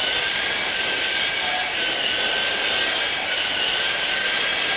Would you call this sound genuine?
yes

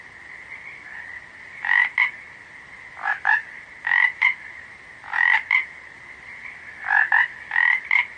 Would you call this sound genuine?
yes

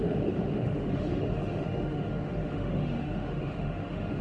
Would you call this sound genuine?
no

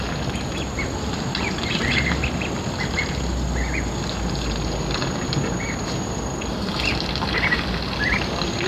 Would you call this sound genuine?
yes